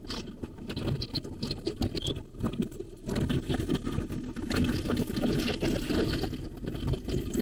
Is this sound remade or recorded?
recorded